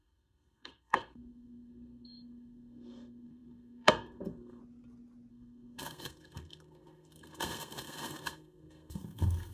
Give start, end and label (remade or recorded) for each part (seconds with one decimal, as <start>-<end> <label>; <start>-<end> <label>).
0.0-4.6 remade; 4.6-5.3 recorded; 5.3-9.5 remade